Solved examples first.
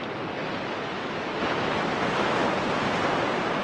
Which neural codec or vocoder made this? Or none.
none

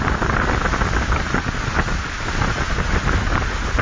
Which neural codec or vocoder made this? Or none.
none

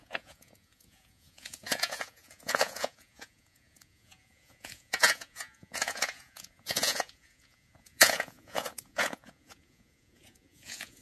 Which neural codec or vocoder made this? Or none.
vocoder, Vocos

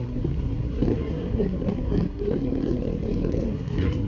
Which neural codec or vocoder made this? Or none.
codec, SNAC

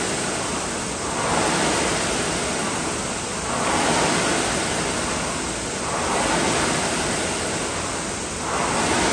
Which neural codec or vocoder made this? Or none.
none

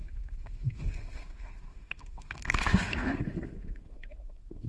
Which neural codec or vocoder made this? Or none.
autoencoder, DAC-VAE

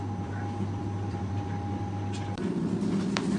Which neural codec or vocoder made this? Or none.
none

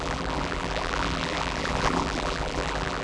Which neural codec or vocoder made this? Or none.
vocoder, BigVGAN v2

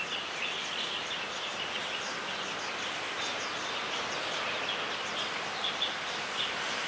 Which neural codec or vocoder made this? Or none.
none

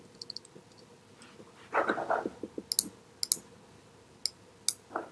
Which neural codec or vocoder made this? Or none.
none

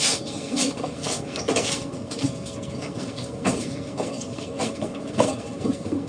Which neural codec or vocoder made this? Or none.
codec, SNAC